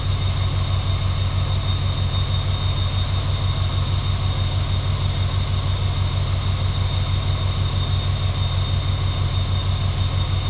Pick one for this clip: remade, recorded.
recorded